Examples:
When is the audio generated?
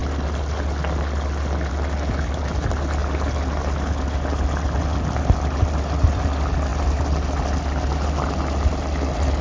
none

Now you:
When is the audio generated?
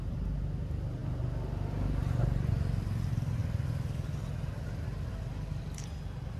none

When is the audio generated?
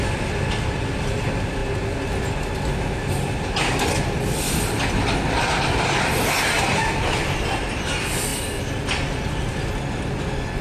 8.3-9.7 (vocoder, BigVGAN v2)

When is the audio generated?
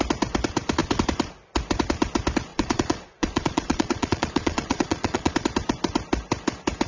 2.5-5.3 (vocoder, Vocos)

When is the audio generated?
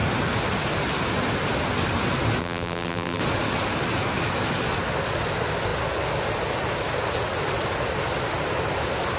2.4-3.2 (vocoder, BigVGAN v2)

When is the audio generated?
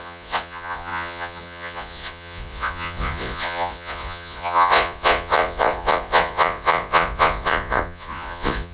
0.0-8.7 (vocoder, Vocos)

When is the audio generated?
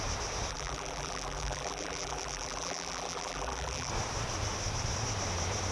0.5-3.9 (vocoder, BigVGAN v2)